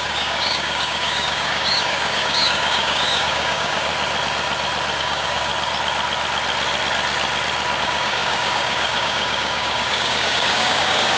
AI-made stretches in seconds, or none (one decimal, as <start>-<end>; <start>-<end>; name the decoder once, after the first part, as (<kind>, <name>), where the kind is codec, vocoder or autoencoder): 0.0-3.9 (codec, DAC); 5.0-5.5; 7.8-11.2

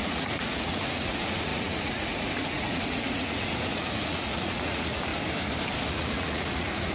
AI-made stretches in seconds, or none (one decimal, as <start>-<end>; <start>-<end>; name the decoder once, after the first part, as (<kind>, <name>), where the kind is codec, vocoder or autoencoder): 0.0-5.1 (vocoder, Vocos); 5.9-6.9

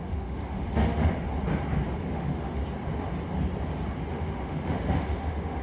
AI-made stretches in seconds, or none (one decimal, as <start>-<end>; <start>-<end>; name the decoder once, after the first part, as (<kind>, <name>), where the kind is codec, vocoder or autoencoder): 0.0-1.3 (autoencoder, DAC-VAE); 2.0-2.6; 4.1-5.6

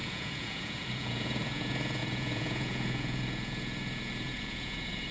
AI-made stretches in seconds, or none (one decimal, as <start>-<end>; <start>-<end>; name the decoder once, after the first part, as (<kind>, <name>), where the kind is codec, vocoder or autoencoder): 0.0-5.1 (vocoder, Vocos)

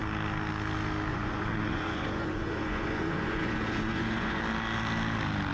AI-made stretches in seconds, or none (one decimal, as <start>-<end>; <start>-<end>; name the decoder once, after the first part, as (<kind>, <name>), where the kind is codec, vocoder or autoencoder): 1.1-4.4 (vocoder, Vocos)

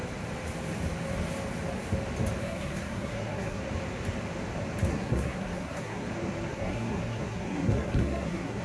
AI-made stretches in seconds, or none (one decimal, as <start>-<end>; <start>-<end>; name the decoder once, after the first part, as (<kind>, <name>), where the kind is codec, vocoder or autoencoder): 2.4-3.6 (codec, SNAC); 4.9-6.1; 6.5-8.6

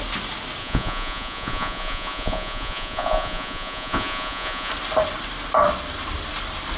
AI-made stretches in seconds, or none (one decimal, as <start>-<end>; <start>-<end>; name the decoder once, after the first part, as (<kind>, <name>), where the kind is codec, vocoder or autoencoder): 0.6-4.7 (vocoder, Vocos)

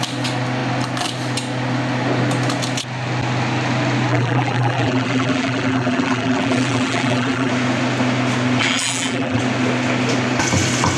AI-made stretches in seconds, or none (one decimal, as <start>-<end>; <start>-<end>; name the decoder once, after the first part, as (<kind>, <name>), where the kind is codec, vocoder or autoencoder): 4.1-7.5 (vocoder, BigVGAN v2); 8.6-9.4